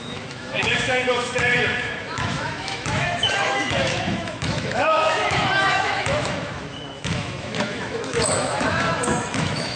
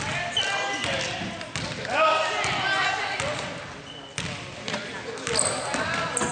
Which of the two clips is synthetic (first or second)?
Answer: first